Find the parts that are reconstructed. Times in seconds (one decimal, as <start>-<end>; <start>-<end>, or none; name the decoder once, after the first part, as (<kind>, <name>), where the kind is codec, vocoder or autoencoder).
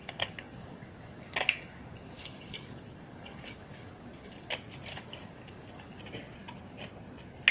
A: 0.0-4.5 (codec, DAC); 4.9-6.0